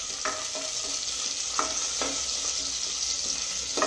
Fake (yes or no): no